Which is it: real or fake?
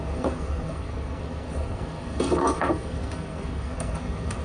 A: fake